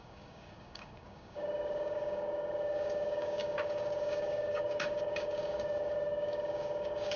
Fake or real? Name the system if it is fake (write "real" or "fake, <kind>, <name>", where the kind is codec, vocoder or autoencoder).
fake, codec, DAC